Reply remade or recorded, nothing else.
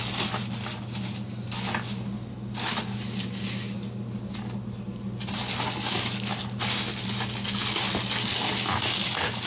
recorded